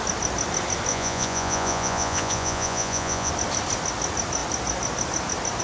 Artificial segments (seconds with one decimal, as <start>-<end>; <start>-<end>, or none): 0.9-3.3